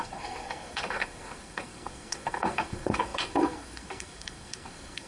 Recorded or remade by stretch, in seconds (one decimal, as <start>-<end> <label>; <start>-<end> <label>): 0.0-5.1 remade